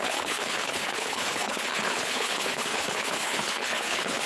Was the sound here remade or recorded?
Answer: remade